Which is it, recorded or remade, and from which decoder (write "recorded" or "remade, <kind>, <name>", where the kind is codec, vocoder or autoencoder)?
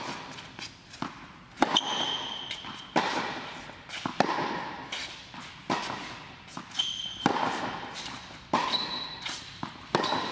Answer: recorded